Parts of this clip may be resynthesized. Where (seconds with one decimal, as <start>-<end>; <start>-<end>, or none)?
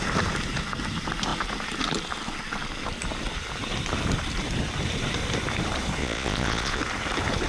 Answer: 6.0-6.8